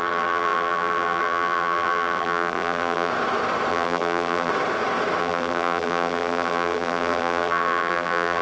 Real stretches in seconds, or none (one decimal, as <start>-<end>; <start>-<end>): 3.1-3.7; 4.5-5.2